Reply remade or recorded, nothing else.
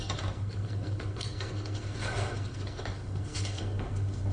remade